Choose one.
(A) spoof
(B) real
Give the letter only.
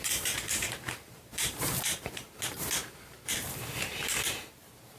A